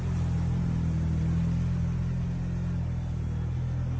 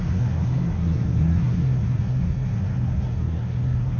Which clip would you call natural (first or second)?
first